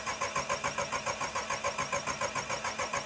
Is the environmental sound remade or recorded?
recorded